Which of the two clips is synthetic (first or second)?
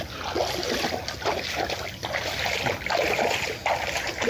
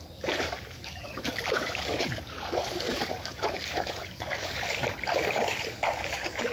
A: second